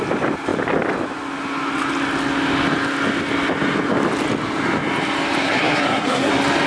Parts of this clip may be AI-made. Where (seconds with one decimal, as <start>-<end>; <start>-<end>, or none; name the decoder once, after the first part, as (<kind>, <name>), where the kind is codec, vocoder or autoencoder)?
5.4-6.3 (codec, SNAC)